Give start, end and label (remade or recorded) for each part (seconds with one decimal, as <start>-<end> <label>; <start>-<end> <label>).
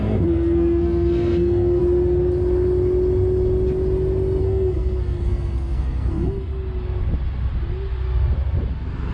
0.0-1.8 remade; 1.8-4.4 recorded; 4.4-6.5 remade; 6.5-9.1 recorded